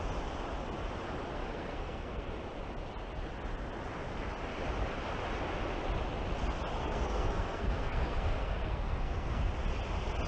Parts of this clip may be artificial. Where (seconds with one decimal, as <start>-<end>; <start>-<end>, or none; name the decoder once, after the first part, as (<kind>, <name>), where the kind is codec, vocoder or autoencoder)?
1.3-2.3 (codec, SNAC); 6.8-9.5